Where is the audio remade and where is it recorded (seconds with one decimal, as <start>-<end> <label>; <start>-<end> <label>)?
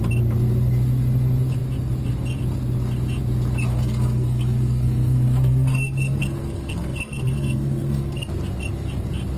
0.0-3.7 recorded; 3.7-8.3 remade; 8.3-9.4 recorded